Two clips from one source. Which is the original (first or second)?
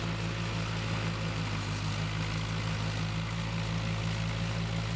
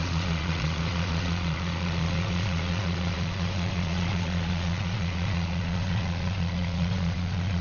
first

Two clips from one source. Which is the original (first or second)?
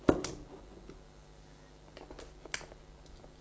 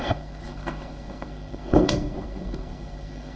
first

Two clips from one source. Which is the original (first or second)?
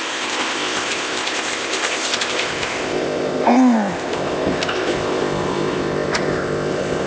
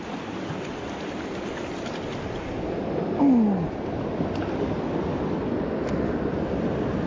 second